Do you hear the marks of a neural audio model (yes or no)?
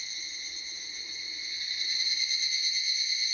no